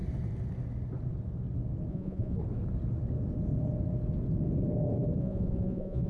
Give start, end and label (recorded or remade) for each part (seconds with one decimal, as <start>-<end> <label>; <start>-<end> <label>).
0.0-1.9 recorded; 1.9-2.4 remade; 2.4-5.2 recorded; 5.2-6.1 remade